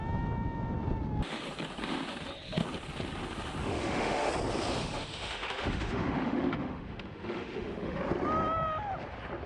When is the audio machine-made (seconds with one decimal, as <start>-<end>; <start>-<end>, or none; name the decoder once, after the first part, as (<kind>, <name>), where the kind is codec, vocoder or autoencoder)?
3.6-4.3 (autoencoder, DAC-VAE); 4.8-8.0